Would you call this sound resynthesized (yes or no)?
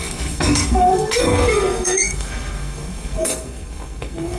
yes